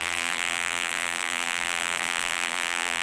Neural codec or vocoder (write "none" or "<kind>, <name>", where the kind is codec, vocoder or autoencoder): vocoder, BigVGAN v2